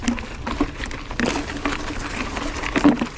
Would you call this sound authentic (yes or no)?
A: yes